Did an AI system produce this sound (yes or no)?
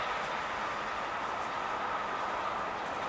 no